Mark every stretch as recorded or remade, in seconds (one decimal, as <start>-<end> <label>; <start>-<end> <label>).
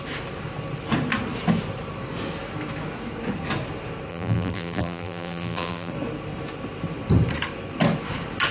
0.0-4.1 recorded; 4.1-5.9 remade; 5.9-8.5 recorded